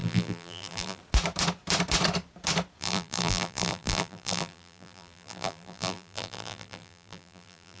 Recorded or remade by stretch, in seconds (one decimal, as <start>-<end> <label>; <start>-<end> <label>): 0.0-1.0 remade; 1.0-2.8 recorded; 2.8-7.8 remade